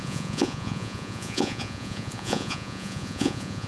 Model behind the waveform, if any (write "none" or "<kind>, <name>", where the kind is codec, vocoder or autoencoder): vocoder, Vocos